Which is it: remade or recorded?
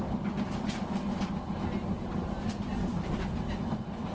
recorded